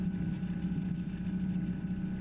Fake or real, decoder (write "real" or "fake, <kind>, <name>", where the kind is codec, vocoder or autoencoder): real